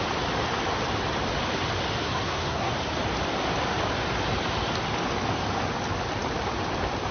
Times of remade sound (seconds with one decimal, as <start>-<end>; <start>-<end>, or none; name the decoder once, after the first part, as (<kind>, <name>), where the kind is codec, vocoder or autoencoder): 2.0-2.7 (codec, SNAC)